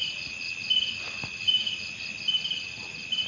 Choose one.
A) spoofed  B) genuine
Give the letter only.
B